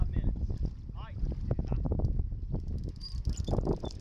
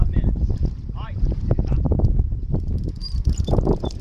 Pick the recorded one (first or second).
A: first